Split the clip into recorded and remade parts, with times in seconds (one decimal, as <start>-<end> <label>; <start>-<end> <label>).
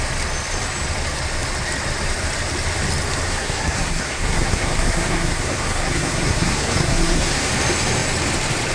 0.0-3.3 recorded; 3.3-7.5 remade; 7.5-8.7 recorded